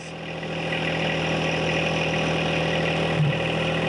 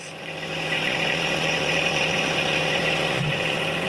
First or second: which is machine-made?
second